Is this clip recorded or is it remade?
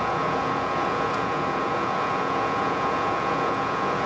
remade